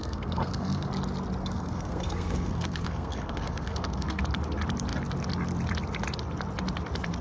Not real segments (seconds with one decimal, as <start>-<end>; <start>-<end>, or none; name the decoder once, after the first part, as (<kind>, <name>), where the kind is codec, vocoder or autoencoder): 0.0-0.9 (codec, SNAC); 1.4-4.2